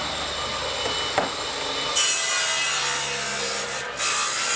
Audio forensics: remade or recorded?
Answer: recorded